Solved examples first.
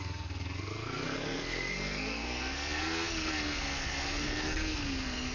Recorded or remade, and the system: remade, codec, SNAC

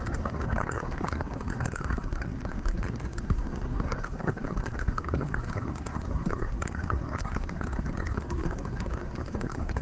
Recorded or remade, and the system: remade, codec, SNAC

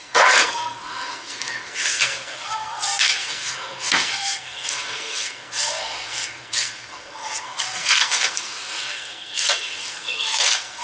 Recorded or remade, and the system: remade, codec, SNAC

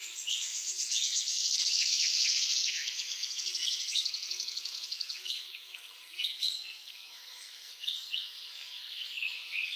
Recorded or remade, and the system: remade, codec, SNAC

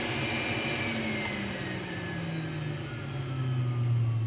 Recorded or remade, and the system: recorded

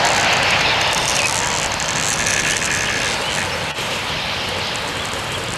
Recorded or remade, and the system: recorded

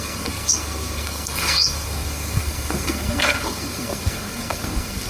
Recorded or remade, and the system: remade, codec, SNAC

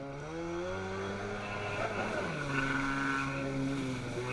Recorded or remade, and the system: recorded